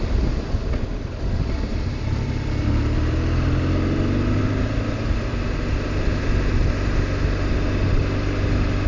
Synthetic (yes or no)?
no